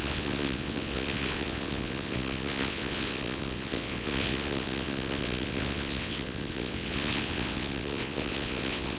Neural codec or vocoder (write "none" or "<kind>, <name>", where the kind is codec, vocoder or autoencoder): vocoder, WaveNeXt